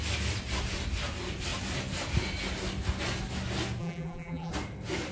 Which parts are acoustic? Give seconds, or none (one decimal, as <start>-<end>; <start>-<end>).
0.0-3.8; 4.5-5.1